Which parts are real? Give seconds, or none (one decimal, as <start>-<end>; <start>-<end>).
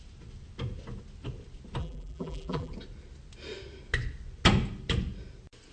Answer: 0.0-1.8; 2.7-5.7